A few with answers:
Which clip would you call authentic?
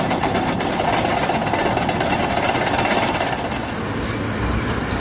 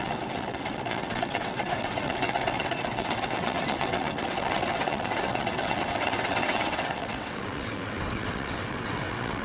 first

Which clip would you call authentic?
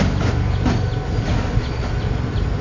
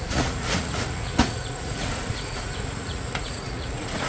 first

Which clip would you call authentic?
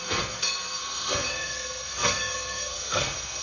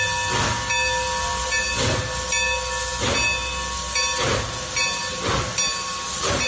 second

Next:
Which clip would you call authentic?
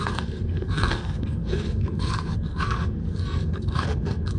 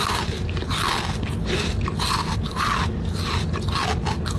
second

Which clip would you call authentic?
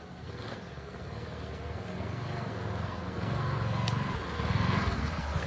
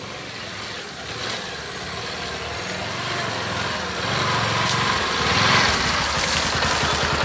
second